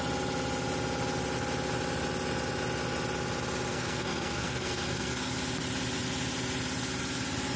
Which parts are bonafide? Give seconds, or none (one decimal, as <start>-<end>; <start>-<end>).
0.0-3.7; 5.3-7.6